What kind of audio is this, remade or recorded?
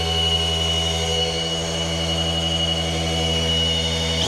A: recorded